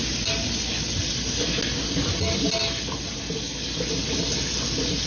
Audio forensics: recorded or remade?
recorded